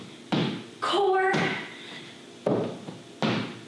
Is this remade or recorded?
recorded